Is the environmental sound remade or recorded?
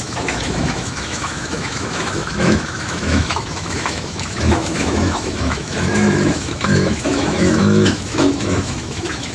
remade